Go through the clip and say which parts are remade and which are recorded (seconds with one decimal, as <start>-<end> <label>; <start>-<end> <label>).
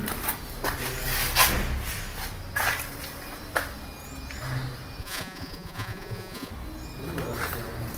0.0-5.0 recorded; 5.0-6.5 remade; 6.5-8.0 recorded